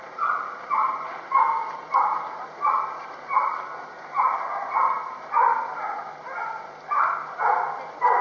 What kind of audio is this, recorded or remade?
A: recorded